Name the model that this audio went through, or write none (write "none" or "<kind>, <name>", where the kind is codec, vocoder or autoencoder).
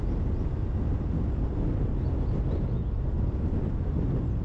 none